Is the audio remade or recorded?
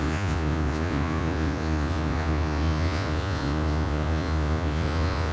remade